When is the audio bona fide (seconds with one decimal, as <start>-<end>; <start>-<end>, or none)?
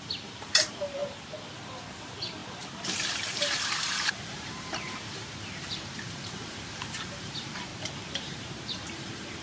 2.4-3.1; 7.7-8.2